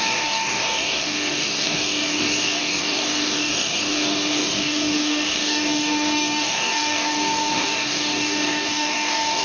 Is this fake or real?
fake